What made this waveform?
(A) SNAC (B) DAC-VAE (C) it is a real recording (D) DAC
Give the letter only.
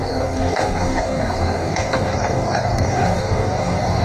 D